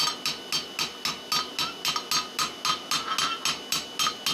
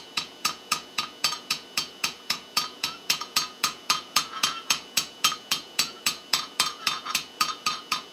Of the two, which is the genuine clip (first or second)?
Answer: first